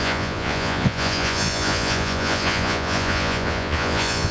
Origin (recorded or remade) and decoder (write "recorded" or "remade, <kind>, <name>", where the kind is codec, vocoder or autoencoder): remade, vocoder, Vocos